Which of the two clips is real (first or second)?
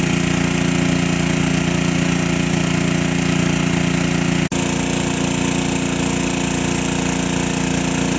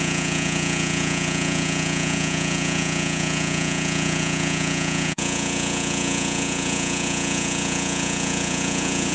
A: first